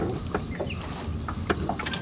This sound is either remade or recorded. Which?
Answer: recorded